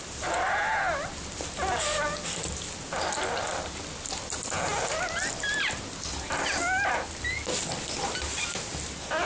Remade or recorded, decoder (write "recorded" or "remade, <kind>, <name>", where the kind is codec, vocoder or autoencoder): recorded